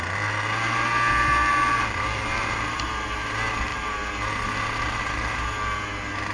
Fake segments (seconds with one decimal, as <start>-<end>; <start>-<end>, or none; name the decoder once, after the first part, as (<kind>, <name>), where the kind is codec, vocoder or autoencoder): 1.4-2.5 (vocoder, BigVGAN v2)